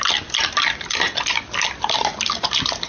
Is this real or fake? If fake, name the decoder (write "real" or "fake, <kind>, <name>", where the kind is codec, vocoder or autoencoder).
fake, vocoder, BigVGAN v2